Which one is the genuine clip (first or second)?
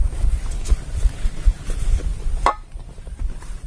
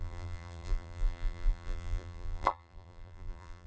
first